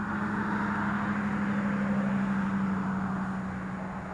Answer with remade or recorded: recorded